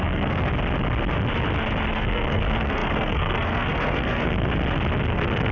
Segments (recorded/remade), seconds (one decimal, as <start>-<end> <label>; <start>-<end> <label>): 0.0-0.5 remade; 0.5-2.0 recorded; 2.0-4.5 remade; 4.5-5.1 recorded; 5.1-5.5 remade